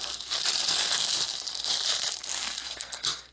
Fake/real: fake